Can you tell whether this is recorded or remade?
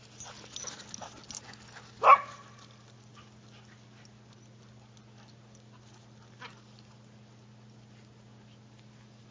recorded